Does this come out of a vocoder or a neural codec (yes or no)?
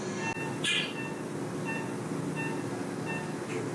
no